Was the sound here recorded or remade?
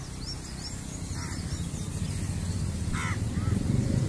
recorded